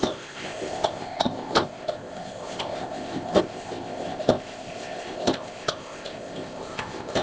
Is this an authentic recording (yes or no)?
no